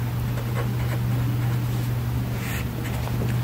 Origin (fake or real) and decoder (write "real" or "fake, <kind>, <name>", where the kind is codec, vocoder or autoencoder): real